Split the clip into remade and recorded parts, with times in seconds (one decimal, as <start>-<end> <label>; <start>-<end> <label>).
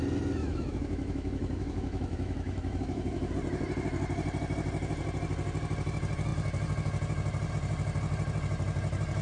0.0-0.4 recorded; 0.4-3.3 remade; 3.3-9.2 recorded